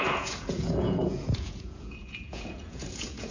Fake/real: fake